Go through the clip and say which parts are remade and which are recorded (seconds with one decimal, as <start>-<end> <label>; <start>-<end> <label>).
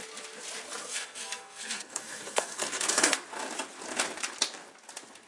0.0-0.8 recorded; 0.8-3.2 remade; 3.2-5.3 recorded